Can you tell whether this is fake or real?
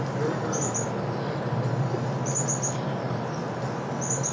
real